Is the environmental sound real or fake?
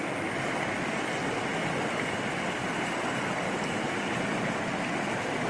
real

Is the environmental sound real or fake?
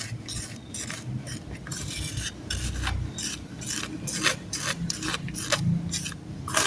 real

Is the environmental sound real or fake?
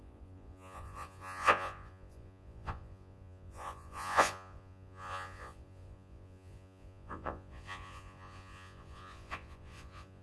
fake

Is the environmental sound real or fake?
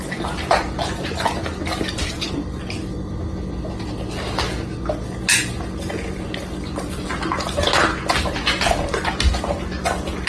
real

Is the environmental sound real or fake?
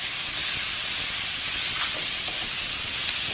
real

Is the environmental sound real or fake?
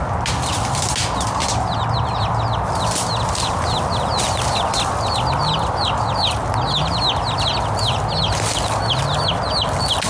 real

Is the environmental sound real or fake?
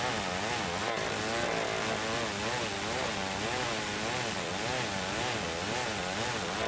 real